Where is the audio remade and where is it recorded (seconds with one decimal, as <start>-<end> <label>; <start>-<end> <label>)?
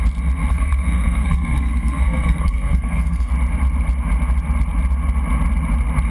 0.0-0.5 recorded; 0.5-3.3 remade; 3.3-6.1 recorded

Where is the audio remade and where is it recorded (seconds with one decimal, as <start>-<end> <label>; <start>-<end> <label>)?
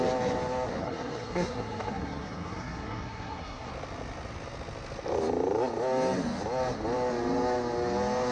0.0-0.8 recorded; 0.8-3.7 remade; 3.7-8.3 recorded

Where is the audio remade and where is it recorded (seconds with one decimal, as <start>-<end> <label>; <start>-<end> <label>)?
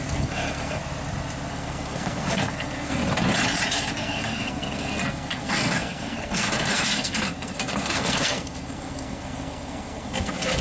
0.0-0.8 remade; 0.8-1.5 recorded; 1.5-3.0 remade; 3.0-3.7 recorded; 3.7-10.6 remade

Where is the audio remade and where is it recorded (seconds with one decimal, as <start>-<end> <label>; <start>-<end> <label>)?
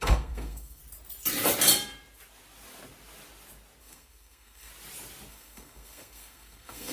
0.0-0.8 remade; 0.8-3.8 recorded; 3.8-4.7 remade; 4.7-5.3 recorded; 5.3-6.9 remade